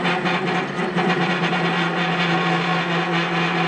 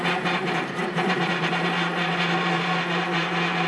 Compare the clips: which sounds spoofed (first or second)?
second